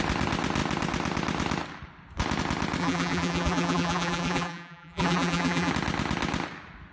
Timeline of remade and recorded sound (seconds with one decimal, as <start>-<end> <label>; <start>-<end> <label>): 0.0-2.8 recorded; 2.8-5.7 remade; 5.7-6.9 recorded